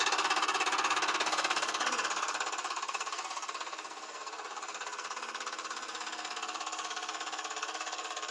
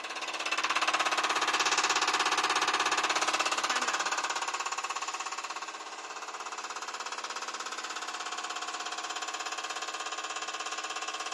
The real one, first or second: second